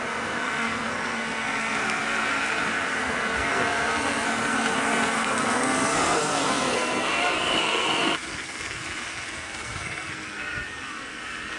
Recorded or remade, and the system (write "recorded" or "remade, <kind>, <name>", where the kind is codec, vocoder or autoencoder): remade, codec, SNAC